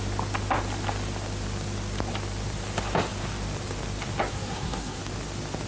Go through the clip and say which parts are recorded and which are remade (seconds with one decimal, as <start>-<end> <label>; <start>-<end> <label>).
0.0-4.3 recorded; 4.3-5.0 remade; 5.0-5.7 recorded